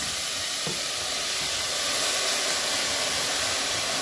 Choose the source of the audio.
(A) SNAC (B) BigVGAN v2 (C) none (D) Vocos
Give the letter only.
C